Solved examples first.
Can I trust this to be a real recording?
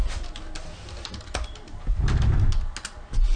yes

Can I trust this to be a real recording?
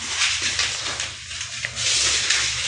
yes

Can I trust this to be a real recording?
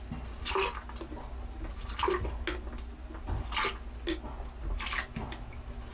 yes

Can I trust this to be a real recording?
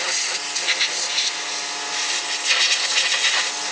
yes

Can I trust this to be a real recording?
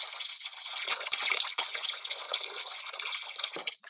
no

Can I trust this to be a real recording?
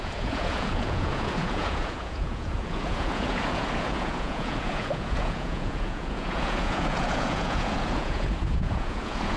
no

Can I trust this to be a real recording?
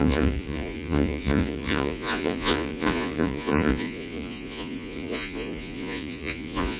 no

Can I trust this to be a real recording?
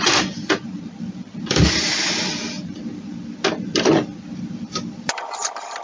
yes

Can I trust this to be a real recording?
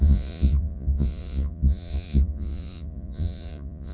no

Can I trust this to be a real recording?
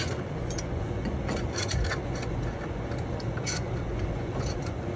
no